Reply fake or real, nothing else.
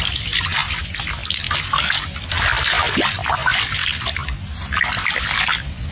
real